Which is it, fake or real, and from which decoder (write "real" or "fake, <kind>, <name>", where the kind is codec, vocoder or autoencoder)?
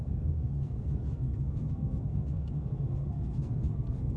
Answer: fake, codec, SNAC